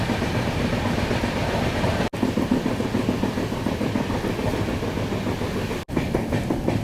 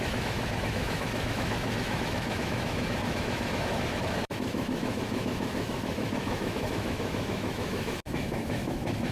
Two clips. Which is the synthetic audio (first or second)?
second